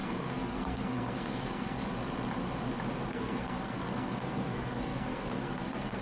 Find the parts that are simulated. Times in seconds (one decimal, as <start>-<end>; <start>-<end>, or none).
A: 0.0-1.9; 3.1-6.0